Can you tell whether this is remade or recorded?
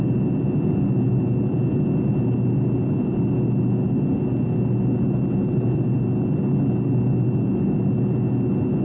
recorded